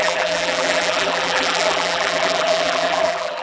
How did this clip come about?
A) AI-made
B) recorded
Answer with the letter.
A